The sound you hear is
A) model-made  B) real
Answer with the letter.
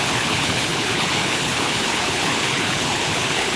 A